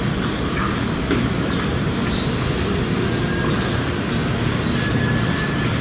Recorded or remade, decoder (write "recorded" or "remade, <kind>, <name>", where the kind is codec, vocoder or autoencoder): recorded